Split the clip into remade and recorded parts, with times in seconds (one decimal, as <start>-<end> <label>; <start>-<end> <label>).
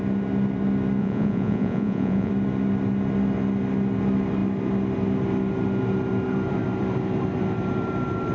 0.0-1.0 recorded; 1.0-2.3 remade; 2.3-8.3 recorded